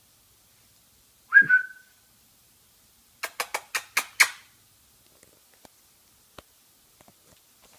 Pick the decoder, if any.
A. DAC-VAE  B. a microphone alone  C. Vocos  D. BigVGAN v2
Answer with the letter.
B